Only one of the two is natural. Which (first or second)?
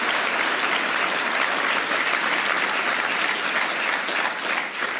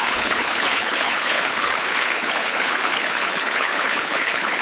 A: first